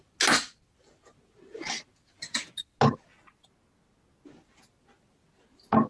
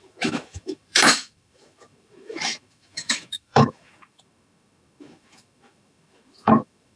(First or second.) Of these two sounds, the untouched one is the first